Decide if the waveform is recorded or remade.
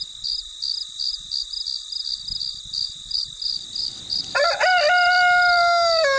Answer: recorded